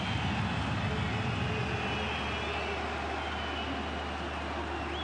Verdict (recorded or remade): recorded